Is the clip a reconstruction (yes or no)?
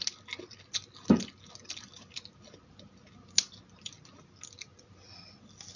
no